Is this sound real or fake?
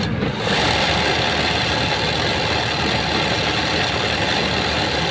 real